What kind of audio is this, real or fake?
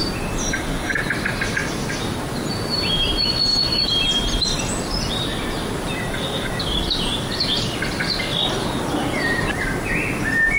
real